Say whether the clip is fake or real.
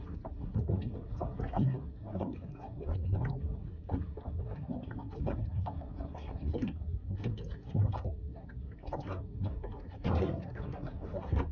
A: fake